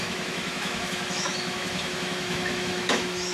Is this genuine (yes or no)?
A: no